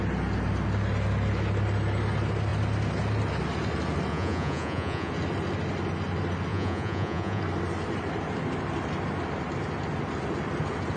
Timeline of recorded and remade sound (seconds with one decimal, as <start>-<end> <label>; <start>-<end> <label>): 0.0-4.1 recorded; 4.1-5.1 remade; 5.1-6.5 recorded; 6.5-7.4 remade; 7.4-11.0 recorded